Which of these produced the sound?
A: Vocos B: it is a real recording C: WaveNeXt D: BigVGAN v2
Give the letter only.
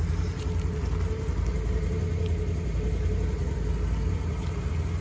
B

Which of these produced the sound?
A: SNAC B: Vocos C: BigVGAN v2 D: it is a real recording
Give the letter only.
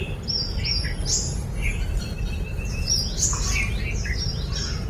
D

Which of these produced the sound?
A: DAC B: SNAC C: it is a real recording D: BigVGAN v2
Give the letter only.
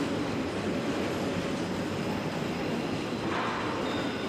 C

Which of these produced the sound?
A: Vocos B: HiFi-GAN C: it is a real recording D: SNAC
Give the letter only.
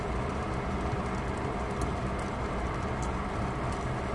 C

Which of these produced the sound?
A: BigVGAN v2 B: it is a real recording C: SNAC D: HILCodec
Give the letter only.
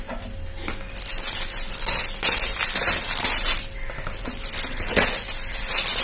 B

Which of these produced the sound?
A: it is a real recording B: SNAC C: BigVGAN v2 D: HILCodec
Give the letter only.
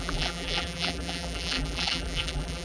C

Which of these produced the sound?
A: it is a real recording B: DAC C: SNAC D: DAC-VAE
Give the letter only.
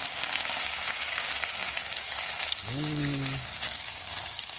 B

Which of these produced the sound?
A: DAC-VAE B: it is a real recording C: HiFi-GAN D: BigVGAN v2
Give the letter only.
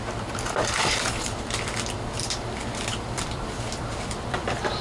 D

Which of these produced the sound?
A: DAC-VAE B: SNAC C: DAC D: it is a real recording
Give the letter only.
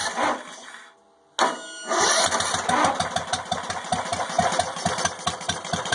D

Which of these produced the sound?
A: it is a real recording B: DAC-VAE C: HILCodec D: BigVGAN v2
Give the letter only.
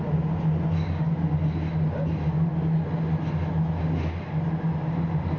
A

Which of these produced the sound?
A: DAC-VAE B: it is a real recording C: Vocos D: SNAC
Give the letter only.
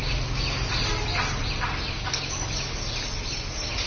B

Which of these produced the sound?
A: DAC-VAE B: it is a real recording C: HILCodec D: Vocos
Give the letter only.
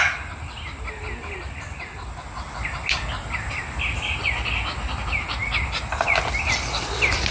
B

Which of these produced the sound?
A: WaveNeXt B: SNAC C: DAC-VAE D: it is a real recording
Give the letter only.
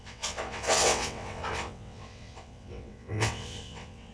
A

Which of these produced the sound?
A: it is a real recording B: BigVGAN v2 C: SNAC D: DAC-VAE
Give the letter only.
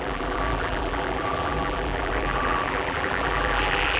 B